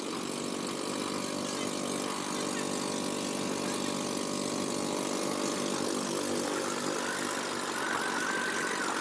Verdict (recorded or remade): recorded